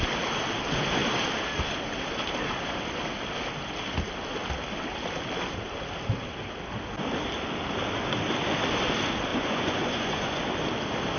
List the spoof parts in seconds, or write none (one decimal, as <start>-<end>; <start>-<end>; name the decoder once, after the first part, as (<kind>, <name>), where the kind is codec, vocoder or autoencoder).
9.3-10.4 (vocoder, Vocos)